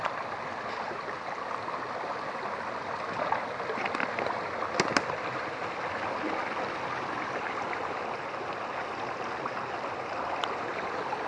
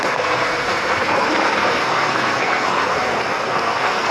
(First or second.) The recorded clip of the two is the first